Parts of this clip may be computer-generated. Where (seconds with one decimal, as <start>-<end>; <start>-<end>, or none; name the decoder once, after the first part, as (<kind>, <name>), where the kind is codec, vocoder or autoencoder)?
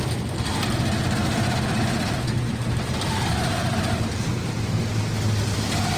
1.2-4.8 (vocoder, BigVGAN v2)